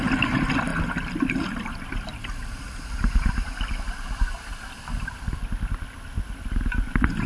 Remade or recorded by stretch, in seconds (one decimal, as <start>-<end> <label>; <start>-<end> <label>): 0.0-7.3 recorded